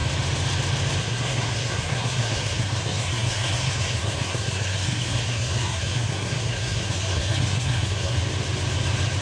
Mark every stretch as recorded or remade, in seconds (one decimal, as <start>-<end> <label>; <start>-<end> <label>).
0.0-1.0 recorded; 1.0-8.2 remade; 8.2-9.2 recorded